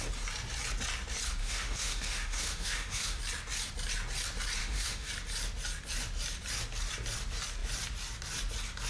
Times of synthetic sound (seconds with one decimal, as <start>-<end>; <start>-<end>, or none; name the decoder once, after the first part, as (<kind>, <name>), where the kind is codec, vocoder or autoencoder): 1.4-3.2 (autoencoder, DAC-VAE); 4.6-5.1